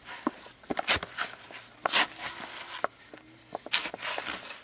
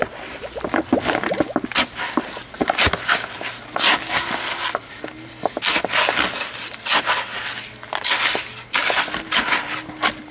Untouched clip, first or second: second